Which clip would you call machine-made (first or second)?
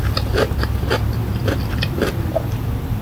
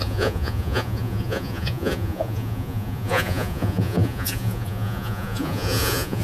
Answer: second